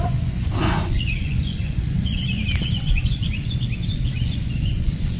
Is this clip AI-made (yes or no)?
yes